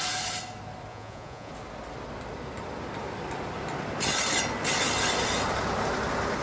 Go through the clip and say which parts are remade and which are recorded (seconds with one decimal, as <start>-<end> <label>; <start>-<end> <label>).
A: 0.0-0.9 recorded; 0.9-1.5 remade; 1.5-6.4 recorded